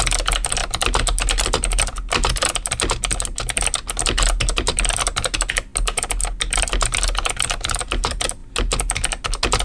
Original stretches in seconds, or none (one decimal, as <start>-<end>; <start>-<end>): 0.0-9.6

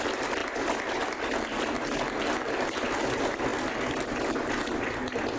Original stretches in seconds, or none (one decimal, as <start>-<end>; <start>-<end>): 0.0-5.4

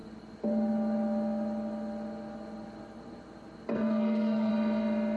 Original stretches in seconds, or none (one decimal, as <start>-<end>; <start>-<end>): 0.0-3.7; 4.5-5.2

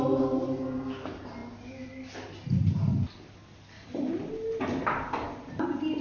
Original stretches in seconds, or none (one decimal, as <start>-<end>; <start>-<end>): 0.0-6.0

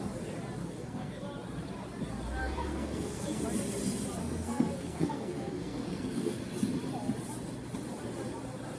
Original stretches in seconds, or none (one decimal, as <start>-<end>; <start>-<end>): 0.0-0.6; 1.2-2.4; 3.4-4.2; 6.4-8.8